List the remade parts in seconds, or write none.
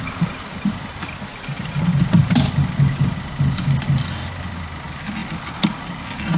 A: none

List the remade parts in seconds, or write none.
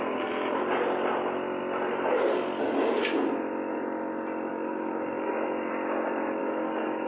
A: 4.5-5.7 (codec, DAC); 6.4-7.1